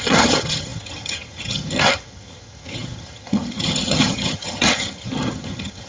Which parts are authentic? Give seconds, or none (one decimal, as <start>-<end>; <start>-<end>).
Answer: none